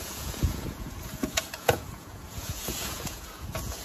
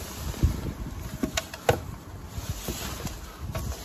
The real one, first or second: second